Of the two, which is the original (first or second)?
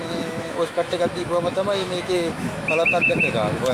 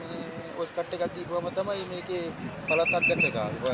second